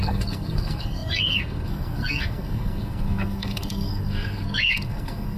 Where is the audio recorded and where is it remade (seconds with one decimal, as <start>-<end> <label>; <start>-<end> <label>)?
0.0-5.4 remade